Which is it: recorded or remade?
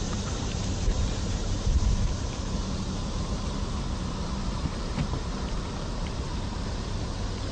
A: remade